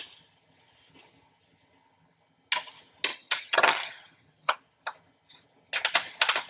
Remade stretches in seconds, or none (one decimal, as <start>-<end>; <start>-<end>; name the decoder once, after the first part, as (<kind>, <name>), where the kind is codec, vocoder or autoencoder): 3.1-4.6 (vocoder, HiFi-GAN)